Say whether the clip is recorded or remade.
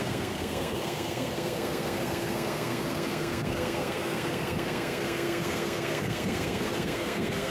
remade